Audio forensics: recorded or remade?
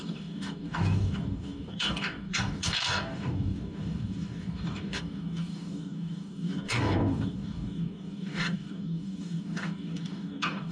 remade